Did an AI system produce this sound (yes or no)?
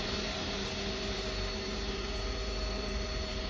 yes